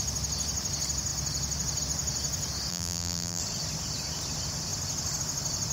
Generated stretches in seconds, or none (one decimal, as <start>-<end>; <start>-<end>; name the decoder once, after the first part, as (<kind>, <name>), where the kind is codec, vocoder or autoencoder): 2.7-3.4 (vocoder, BigVGAN v2)